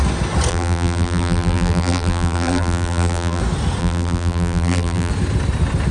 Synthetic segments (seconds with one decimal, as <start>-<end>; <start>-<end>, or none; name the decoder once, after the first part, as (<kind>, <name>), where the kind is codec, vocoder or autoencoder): 0.5-3.4 (vocoder, BigVGAN v2); 3.8-5.1